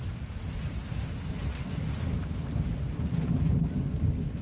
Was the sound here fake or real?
real